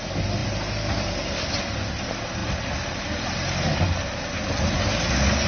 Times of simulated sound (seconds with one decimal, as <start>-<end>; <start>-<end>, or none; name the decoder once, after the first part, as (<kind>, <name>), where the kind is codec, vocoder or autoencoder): none